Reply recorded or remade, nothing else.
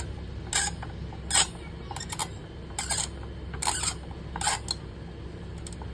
recorded